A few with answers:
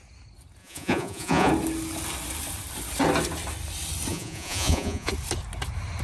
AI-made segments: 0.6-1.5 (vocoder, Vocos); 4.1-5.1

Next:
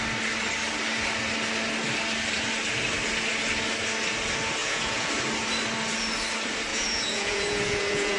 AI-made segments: 4.6-5.1 (vocoder, Vocos); 6.7-8.2

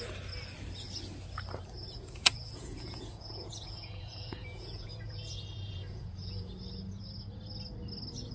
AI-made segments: 1.8-6.4 (vocoder, Vocos)

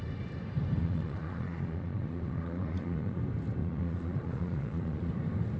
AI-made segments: 0.8-3.2 (vocoder, Vocos); 3.6-5.1